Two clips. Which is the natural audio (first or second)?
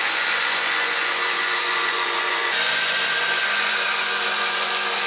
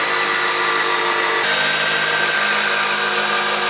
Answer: second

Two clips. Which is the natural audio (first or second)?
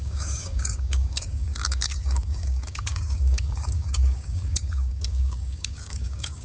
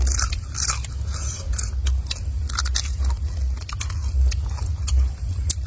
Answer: second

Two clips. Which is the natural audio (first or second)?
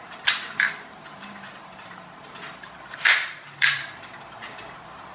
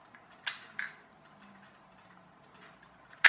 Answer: second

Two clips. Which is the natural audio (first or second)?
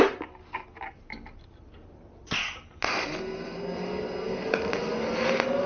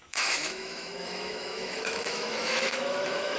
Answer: first